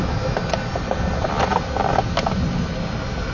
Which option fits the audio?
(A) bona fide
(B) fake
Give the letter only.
A